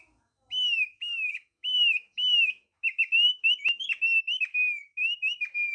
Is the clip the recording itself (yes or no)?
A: no